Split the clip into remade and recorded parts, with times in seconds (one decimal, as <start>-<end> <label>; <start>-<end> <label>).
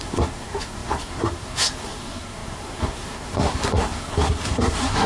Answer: 0.0-5.1 remade